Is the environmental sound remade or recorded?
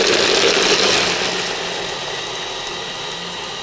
recorded